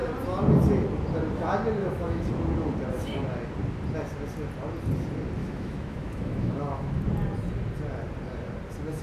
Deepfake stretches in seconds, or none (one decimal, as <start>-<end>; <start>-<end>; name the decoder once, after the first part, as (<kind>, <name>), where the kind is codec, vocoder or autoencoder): 1.8-2.3 (autoencoder, DAC-VAE); 5.4-7.0